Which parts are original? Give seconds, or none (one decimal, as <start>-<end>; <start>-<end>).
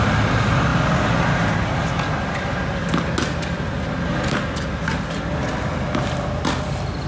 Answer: 0.0-7.1